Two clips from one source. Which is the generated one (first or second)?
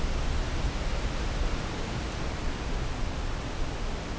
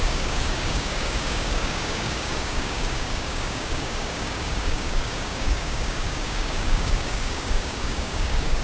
second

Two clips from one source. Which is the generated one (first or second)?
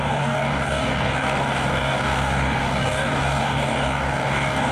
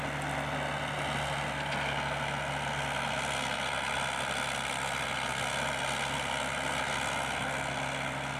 first